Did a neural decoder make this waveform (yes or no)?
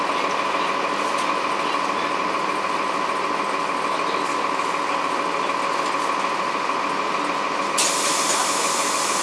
no